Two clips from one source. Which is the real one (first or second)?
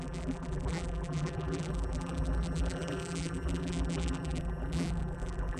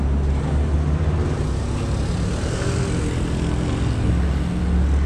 second